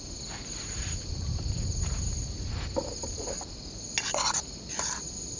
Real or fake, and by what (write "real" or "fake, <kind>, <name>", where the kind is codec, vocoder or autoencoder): real